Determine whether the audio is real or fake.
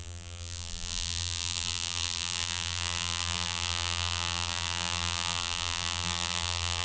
fake